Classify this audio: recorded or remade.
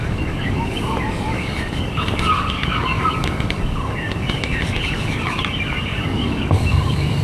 remade